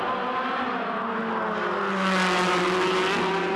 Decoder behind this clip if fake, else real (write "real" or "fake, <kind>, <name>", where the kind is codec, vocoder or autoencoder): real